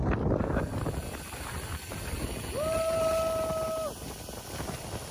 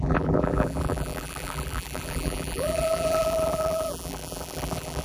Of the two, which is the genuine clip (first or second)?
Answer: first